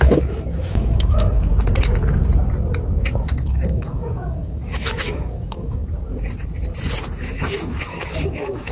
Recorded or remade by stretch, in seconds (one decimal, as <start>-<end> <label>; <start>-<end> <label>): 0.0-1.5 remade; 1.5-3.0 recorded; 3.0-5.8 remade; 5.8-7.2 recorded; 7.2-8.7 remade